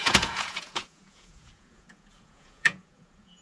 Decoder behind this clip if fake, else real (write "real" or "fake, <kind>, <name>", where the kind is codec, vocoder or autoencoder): fake, vocoder, Vocos